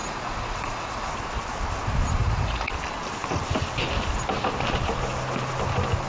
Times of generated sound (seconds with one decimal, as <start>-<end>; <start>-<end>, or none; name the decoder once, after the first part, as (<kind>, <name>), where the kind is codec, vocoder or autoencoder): 0.0-1.1 (vocoder, Vocos); 2.2-2.7